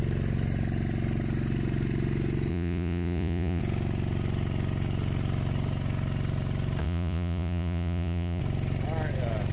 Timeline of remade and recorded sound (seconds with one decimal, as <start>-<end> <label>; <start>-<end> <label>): 0.0-2.5 recorded; 2.5-3.6 remade; 3.6-6.8 recorded; 6.8-8.4 remade; 8.4-9.5 recorded